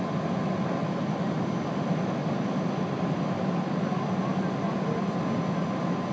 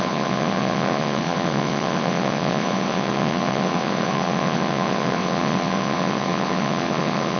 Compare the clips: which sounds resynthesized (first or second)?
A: second